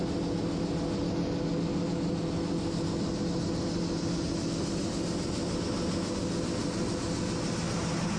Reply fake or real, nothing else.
real